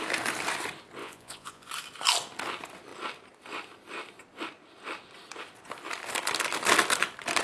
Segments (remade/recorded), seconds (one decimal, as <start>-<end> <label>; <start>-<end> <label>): 0.0-1.0 recorded; 1.0-1.7 remade; 1.7-7.4 recorded